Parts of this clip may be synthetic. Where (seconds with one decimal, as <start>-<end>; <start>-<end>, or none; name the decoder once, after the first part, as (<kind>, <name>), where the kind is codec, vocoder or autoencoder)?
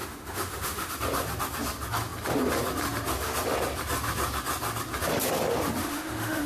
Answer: 0.0-0.9 (autoencoder, DAC-VAE); 5.8-6.5